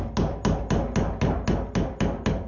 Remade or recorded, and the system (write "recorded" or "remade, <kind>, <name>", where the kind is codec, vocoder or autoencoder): recorded